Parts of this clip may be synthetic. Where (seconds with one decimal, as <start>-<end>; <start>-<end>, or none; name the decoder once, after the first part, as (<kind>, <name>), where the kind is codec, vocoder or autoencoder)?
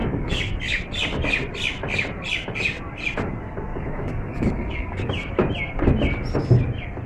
0.0-0.6 (codec, DAC); 3.7-5.1